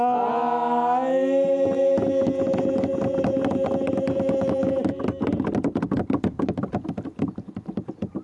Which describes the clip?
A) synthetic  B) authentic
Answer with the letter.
B